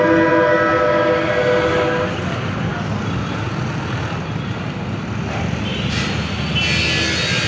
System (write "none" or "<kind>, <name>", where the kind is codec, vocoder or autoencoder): none